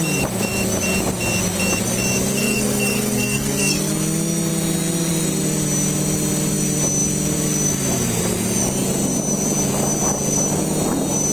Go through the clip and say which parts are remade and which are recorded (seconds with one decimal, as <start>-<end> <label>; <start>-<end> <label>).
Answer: 0.0-2.4 recorded; 2.4-3.9 remade; 3.9-11.3 recorded